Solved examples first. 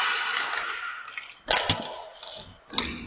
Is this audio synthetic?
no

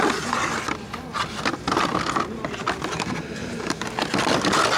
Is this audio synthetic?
no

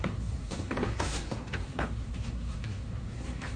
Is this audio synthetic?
yes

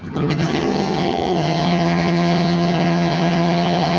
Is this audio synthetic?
yes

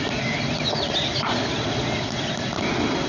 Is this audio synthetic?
no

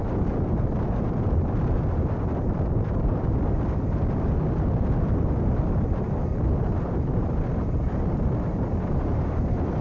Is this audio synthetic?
yes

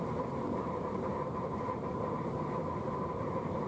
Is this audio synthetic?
yes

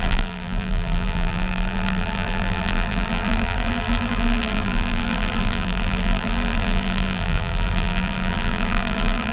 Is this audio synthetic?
yes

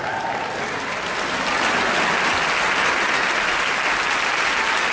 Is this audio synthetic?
no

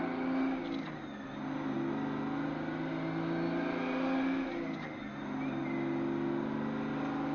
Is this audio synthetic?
no